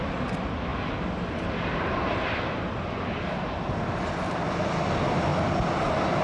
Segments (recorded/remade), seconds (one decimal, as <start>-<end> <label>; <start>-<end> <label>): 0.0-6.2 recorded